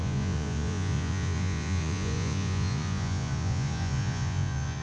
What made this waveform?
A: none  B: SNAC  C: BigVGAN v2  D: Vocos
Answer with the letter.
D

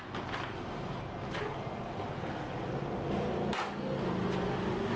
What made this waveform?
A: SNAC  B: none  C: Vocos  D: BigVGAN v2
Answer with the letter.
B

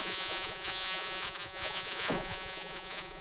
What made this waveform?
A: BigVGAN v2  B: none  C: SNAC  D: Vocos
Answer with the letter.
D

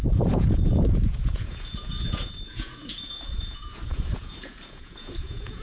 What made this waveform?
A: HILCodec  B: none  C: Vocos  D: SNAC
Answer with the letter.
C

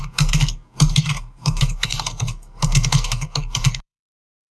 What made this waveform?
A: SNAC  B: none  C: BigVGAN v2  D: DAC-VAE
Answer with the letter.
A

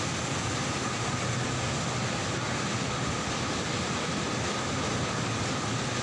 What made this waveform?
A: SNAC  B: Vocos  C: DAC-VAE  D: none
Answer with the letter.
D